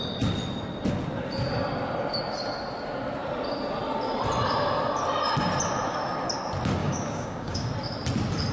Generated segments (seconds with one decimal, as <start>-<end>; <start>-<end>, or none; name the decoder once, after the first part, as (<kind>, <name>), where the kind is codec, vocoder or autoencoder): 6.8-7.7 (codec, DAC)